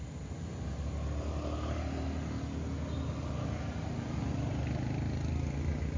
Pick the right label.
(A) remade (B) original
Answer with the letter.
B